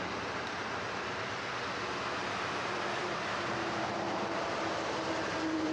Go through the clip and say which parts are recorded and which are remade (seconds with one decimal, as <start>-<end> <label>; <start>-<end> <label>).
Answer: 0.0-2.2 recorded; 2.2-4.7 remade; 4.7-5.7 recorded